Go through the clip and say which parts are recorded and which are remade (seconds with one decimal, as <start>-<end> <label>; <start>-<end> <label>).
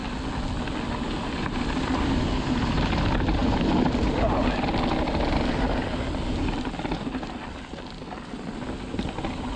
0.0-0.9 recorded; 0.9-3.4 remade; 3.4-6.9 recorded; 6.9-9.6 remade